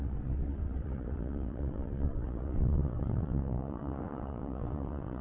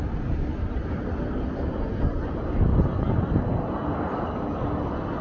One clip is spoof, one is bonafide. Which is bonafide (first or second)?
second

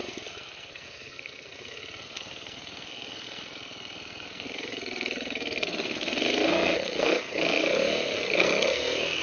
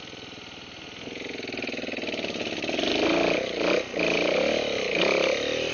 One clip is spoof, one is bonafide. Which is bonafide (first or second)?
second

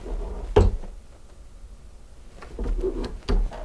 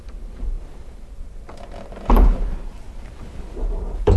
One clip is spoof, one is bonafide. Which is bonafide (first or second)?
first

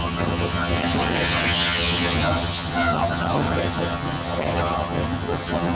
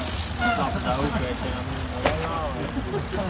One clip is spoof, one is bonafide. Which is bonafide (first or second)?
second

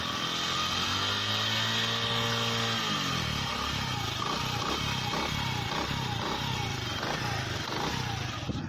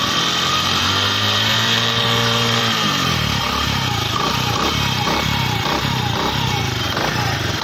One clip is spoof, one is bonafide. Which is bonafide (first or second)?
first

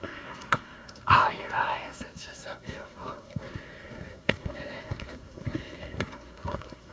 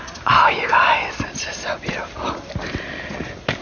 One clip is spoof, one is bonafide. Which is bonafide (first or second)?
second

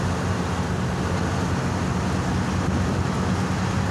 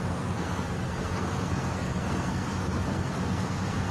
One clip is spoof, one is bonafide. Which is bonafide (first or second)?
first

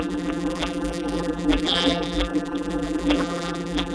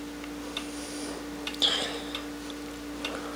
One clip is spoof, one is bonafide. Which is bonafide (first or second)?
second